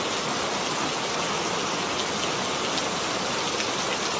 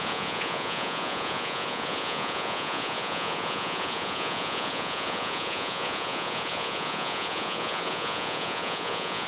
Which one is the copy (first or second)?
second